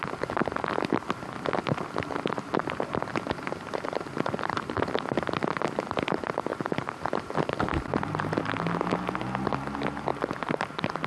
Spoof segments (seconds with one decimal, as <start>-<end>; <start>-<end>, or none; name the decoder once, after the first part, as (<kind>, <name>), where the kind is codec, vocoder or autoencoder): none